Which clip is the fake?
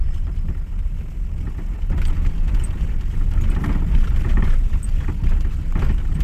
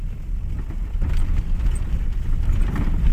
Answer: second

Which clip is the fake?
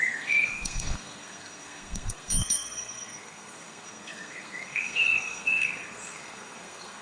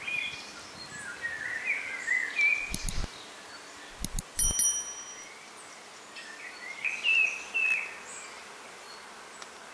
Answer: first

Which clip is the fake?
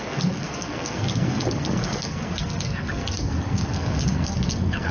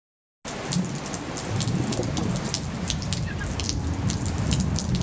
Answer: first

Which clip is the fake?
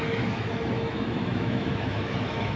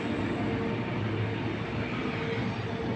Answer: first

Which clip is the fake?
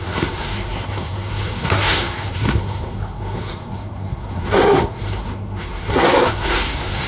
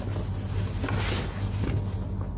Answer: first